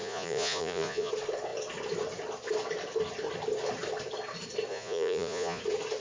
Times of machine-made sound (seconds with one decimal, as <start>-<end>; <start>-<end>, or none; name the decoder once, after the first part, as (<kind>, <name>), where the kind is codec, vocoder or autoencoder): 0.0-1.1 (vocoder, Vocos); 4.7-5.6